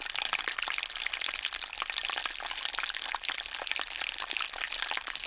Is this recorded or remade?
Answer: recorded